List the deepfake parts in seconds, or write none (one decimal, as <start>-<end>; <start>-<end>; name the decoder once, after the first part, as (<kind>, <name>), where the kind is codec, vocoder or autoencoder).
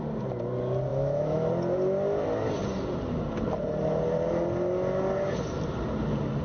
0.9-1.5 (autoencoder, DAC-VAE)